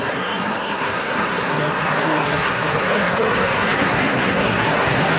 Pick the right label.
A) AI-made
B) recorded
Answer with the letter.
A